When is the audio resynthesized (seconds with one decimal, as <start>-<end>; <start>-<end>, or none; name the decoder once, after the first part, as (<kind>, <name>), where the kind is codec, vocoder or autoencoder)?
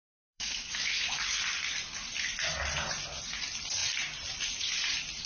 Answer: 0.0-1.4 (autoencoder, DAC-VAE)